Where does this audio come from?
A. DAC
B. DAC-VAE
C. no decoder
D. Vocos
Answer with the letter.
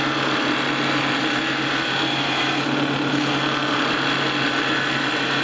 C